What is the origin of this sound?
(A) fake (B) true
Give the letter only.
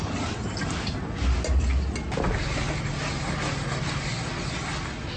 B